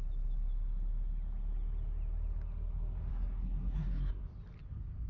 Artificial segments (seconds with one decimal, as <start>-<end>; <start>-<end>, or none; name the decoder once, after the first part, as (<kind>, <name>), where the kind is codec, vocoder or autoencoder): 3.1-4.2 (codec, SNAC)